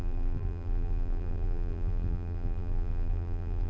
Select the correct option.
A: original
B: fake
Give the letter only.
B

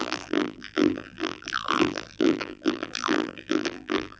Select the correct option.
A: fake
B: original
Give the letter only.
A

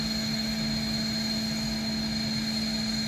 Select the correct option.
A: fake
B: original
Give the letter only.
B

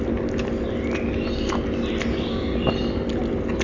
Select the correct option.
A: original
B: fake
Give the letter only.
A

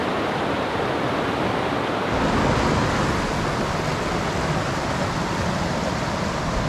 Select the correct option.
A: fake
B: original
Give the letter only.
B